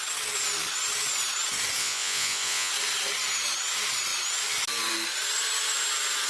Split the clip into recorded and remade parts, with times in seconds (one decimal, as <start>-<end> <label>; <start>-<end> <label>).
0.0-1.8 recorded; 1.8-2.7 remade; 2.7-6.3 recorded